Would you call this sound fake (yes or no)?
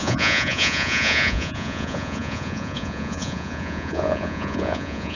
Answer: yes